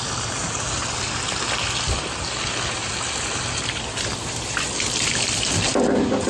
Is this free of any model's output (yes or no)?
yes